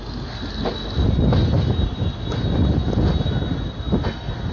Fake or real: real